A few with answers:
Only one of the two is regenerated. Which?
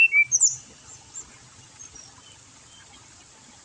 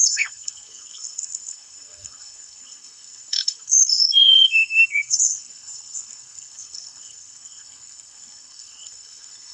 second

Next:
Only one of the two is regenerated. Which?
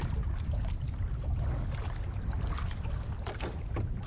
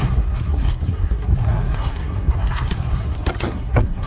second